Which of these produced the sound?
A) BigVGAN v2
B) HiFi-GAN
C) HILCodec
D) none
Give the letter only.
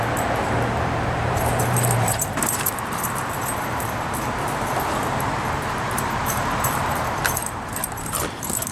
A